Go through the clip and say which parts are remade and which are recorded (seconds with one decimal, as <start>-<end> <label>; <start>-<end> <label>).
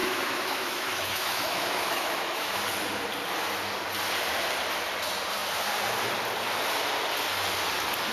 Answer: 0.0-2.6 remade; 2.6-8.1 recorded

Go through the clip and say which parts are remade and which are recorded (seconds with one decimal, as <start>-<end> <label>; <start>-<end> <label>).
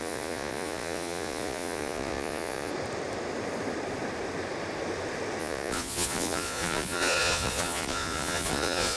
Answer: 0.0-2.7 remade; 2.7-5.4 recorded; 5.4-9.0 remade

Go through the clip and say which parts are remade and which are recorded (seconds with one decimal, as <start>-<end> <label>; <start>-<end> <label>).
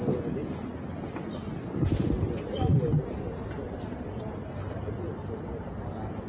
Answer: 0.0-2.9 recorded; 2.9-5.3 remade; 5.3-6.3 recorded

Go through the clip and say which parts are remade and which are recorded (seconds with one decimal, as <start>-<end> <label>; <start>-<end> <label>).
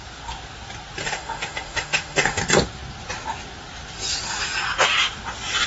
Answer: 0.0-1.0 recorded; 1.0-2.4 remade; 2.4-5.7 recorded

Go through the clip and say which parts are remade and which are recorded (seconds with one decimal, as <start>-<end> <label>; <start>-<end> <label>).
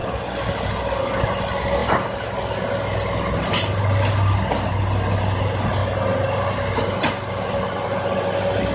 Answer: 0.0-8.7 recorded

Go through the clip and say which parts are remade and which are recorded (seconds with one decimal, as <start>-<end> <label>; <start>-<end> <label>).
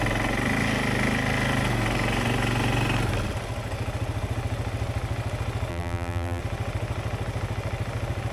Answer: 0.0-5.7 recorded; 5.7-6.4 remade; 6.4-8.3 recorded